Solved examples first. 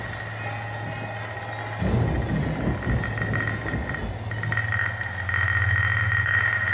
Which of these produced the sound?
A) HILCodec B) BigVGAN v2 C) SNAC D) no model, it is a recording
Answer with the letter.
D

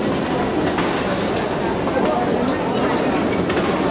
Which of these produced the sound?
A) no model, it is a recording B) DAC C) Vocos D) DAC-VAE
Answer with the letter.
A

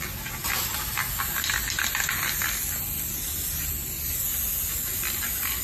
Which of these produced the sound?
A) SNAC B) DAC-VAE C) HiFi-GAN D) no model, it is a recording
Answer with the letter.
D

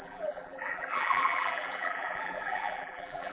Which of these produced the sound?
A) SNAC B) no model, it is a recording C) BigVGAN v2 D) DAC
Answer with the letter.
C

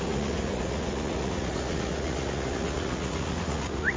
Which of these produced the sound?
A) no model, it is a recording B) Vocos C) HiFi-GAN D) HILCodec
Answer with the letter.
B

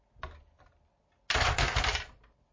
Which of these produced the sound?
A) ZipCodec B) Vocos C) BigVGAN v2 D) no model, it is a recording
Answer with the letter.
D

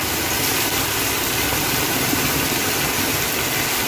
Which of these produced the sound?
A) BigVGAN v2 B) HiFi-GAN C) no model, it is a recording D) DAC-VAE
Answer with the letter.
C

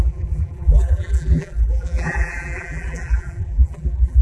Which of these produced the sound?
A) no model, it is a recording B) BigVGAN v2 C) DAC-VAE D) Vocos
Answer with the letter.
B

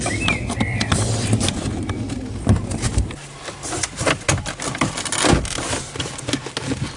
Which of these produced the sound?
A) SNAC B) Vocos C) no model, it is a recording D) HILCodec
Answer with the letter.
C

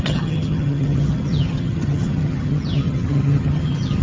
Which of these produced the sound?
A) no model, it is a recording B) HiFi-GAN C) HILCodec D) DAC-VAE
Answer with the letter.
B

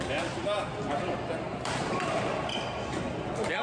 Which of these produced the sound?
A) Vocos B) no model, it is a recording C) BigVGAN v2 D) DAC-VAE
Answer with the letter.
B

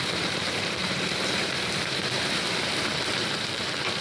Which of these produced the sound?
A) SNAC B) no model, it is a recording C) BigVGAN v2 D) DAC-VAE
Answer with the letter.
C